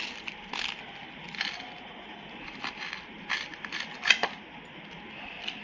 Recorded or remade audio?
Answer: recorded